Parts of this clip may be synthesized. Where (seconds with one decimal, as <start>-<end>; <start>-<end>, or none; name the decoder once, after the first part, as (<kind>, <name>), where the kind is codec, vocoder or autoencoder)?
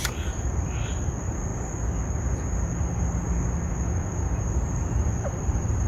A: 0.0-1.5 (vocoder, BigVGAN v2); 4.5-5.9